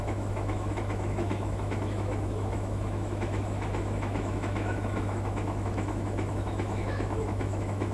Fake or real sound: fake